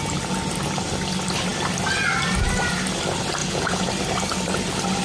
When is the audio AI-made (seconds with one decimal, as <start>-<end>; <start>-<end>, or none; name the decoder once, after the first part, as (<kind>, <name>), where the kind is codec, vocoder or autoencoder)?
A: 3.4-3.9 (vocoder, Vocos)